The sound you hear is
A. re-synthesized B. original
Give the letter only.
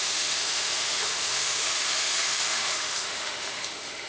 A